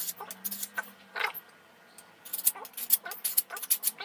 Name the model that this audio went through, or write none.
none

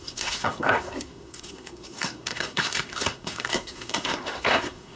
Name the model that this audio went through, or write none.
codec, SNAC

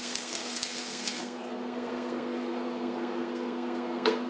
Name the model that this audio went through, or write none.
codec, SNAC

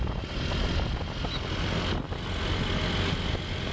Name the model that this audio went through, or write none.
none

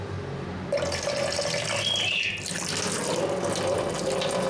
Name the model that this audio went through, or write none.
none